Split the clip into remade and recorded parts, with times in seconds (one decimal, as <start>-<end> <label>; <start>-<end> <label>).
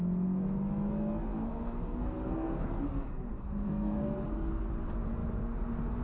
0.0-1.3 recorded; 1.3-4.6 remade; 4.6-6.0 recorded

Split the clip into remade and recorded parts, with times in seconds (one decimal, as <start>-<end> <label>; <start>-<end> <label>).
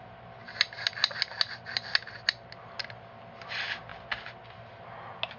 0.0-5.4 recorded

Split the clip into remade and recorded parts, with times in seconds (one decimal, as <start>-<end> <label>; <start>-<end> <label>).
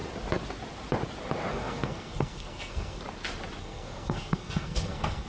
0.0-1.5 recorded; 1.5-3.0 remade; 3.0-3.6 recorded; 3.6-5.3 remade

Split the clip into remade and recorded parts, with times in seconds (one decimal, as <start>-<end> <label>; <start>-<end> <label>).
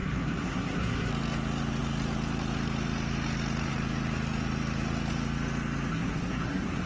0.0-1.1 remade; 1.1-5.9 recorded; 5.9-6.9 remade